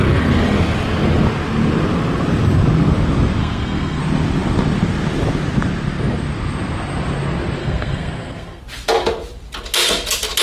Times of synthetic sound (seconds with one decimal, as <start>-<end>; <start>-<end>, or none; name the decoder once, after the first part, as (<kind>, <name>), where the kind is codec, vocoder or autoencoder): 3.4-4.0 (codec, SNAC); 7.6-8.6